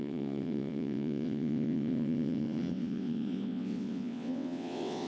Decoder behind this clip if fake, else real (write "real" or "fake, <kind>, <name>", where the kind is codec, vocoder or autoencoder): fake, vocoder, WaveNeXt